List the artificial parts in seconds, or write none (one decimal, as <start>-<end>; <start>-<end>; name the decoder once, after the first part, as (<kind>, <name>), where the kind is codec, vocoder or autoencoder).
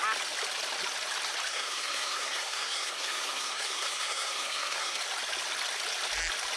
1.5-5.0 (codec, SNAC)